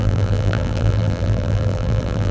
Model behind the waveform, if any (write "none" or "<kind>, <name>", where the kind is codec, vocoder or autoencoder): vocoder, BigVGAN v2